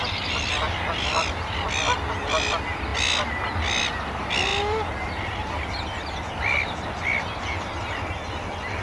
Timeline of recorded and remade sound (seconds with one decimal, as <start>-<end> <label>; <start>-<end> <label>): 0.0-8.8 recorded